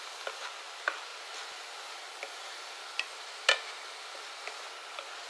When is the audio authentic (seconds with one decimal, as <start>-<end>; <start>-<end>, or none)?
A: 0.0-5.3